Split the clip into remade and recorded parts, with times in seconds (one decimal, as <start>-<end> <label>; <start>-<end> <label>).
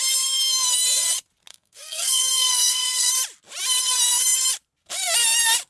0.0-1.5 recorded; 1.5-3.1 remade; 3.1-5.7 recorded